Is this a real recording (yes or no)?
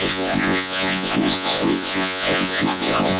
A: no